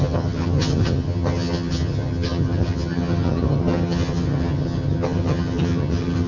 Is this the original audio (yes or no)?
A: no